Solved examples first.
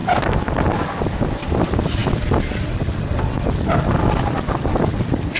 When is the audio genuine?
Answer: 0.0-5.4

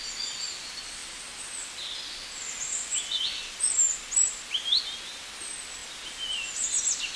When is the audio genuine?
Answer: 0.0-7.2

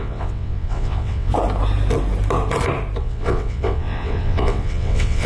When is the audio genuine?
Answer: 1.3-3.0

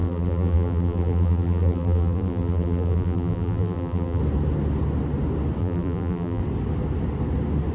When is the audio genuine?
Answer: 4.2-5.6; 6.4-7.7

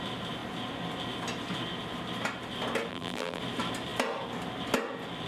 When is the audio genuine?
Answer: 0.0-2.9; 3.4-5.3

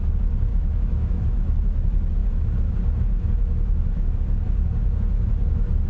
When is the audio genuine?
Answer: 0.0-0.5; 1.2-5.9